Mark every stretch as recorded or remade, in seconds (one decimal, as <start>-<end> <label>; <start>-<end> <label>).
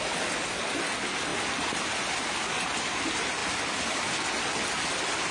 0.0-5.3 recorded